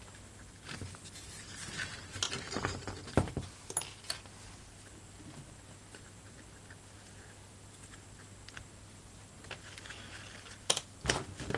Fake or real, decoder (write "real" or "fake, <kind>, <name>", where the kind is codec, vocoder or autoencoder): real